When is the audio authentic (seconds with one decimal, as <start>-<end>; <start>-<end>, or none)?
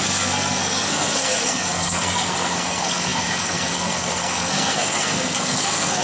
none